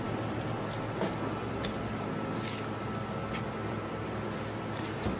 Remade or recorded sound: recorded